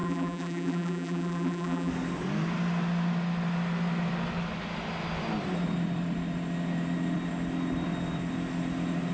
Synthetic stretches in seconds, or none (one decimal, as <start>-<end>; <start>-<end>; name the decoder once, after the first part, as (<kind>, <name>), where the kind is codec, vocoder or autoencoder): 0.0-1.9 (vocoder, BigVGAN v2)